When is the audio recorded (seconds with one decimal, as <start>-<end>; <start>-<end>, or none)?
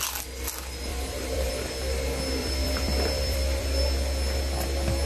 0.0-0.9; 1.5-2.4; 3.8-5.1